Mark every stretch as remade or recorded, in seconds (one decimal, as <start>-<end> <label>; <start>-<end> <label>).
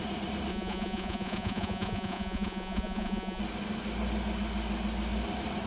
0.0-0.5 recorded; 0.5-3.4 remade; 3.4-5.7 recorded